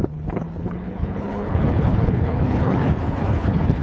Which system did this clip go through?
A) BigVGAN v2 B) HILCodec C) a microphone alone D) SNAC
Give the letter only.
B